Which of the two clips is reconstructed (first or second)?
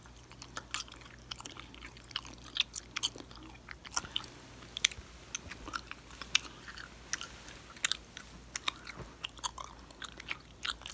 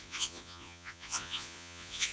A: second